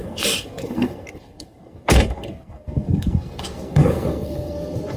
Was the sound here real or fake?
fake